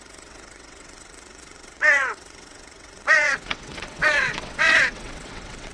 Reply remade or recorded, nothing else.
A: remade